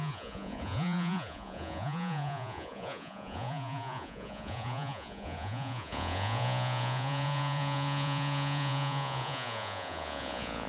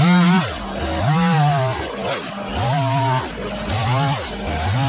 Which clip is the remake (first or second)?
first